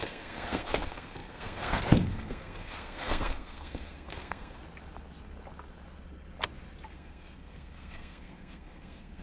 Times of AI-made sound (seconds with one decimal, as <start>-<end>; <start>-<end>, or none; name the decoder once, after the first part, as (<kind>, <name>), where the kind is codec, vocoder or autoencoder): 0.0-4.6 (codec, SNAC); 6.9-9.2